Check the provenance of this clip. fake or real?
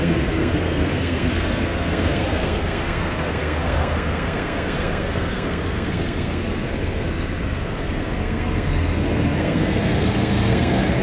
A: fake